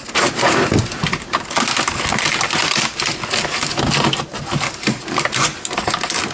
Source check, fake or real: real